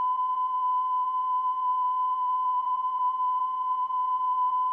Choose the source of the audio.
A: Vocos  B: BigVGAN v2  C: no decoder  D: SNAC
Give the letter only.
A